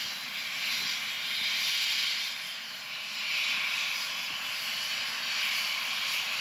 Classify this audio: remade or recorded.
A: recorded